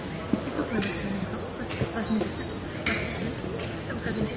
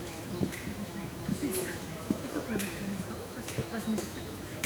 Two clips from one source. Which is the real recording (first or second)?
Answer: first